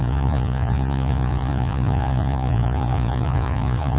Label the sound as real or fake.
fake